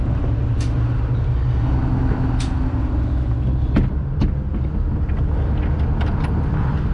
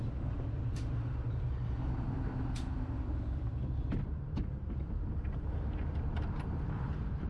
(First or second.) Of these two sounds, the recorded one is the first